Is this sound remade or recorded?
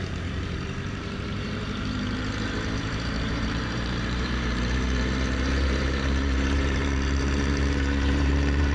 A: remade